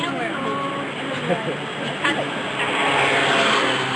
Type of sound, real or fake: real